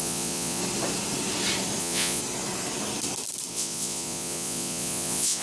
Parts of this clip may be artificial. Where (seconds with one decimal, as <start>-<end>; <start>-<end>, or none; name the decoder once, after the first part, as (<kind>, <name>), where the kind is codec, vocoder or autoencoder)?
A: 0.0-0.6 (vocoder, Vocos); 1.8-2.2; 3.5-5.4

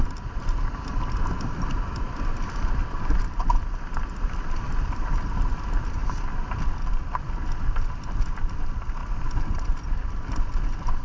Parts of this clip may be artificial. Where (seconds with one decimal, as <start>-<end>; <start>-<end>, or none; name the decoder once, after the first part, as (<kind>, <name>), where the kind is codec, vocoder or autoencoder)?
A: 2.8-4.9 (vocoder, BigVGAN v2)

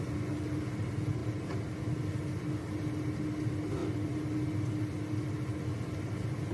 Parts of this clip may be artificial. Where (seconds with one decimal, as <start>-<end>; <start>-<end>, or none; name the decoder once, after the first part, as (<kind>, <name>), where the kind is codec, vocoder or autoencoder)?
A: none

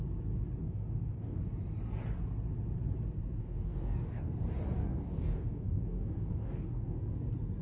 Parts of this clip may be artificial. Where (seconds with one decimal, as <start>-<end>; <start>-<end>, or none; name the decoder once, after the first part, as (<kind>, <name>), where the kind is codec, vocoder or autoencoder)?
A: 0.6-1.4 (codec, DAC); 3.4-4.3; 4.8-7.0

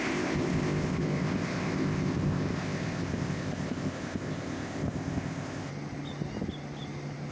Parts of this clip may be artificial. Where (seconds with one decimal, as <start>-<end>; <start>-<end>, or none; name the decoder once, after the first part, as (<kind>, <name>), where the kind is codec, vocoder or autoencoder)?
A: 0.0-5.7 (codec, ZipCodec)

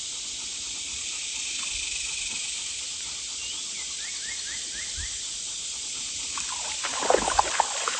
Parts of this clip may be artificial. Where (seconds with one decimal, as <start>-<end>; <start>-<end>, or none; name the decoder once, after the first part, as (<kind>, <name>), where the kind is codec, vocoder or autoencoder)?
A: none